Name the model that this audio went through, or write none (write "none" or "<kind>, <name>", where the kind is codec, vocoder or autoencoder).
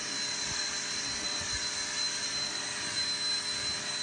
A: none